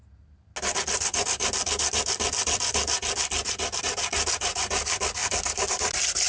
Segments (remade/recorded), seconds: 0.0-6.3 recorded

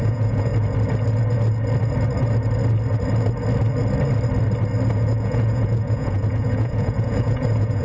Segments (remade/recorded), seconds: 0.0-0.5 remade; 0.5-4.9 recorded; 4.9-7.8 remade

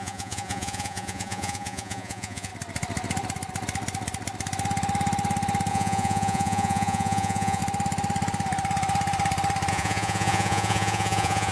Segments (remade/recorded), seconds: 0.0-2.5 remade; 2.5-5.7 recorded; 5.7-7.6 remade; 7.6-9.7 recorded; 9.7-11.5 remade

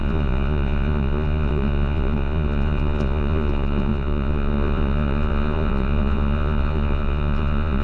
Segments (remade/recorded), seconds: 0.0-7.8 remade

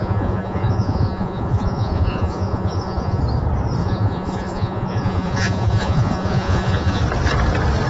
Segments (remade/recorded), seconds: 0.0-3.2 remade; 3.2-3.8 recorded; 3.8-7.0 remade; 7.0-7.9 recorded